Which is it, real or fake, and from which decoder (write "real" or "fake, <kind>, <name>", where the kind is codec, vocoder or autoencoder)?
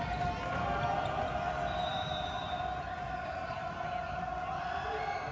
real